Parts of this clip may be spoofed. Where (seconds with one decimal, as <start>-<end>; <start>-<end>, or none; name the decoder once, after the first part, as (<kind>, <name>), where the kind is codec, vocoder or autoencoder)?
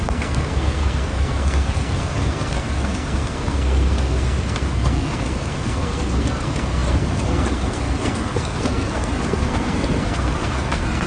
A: 0.0-11.1 (codec, SNAC)